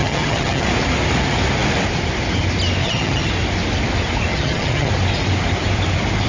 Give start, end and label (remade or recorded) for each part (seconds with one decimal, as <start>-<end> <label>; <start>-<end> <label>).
0.0-0.7 remade; 0.7-2.8 recorded; 2.8-3.3 remade; 3.3-4.3 recorded; 4.3-4.9 remade; 4.9-6.3 recorded